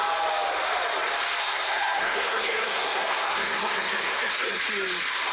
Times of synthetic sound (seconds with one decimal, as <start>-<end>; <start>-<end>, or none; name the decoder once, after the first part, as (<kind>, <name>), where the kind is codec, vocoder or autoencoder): 1.4-4.6 (codec, SNAC)